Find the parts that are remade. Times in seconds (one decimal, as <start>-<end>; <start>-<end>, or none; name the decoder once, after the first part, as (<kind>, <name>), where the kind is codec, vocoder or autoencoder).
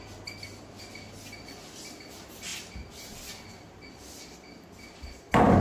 none